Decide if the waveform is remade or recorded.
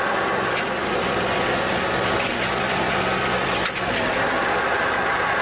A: recorded